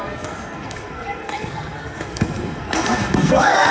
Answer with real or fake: fake